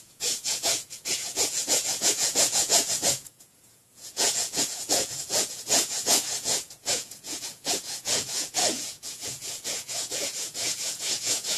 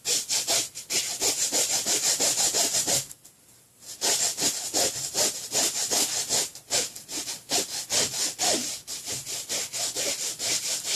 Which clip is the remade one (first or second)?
first